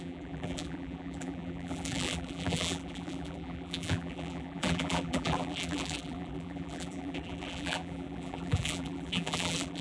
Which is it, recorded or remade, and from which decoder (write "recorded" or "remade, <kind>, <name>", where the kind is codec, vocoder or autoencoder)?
remade, vocoder, BigVGAN v2